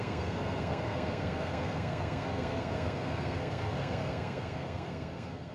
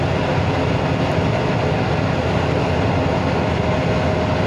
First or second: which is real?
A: second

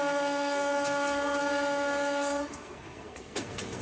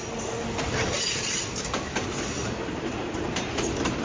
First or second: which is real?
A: second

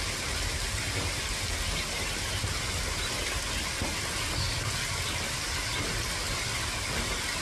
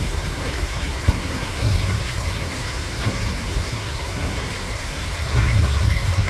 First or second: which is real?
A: first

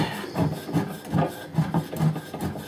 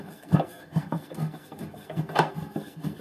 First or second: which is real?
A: first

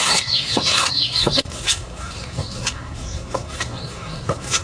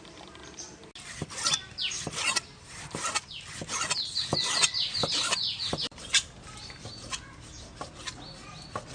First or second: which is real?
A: second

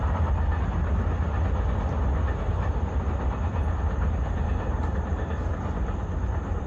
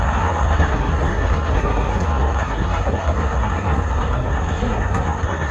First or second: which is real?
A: first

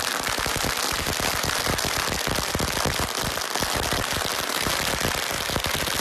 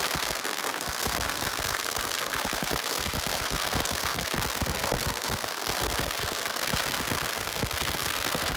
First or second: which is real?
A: first